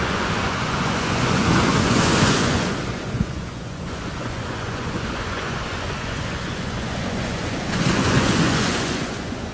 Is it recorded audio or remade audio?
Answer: remade